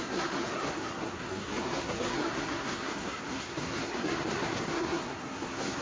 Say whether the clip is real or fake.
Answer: fake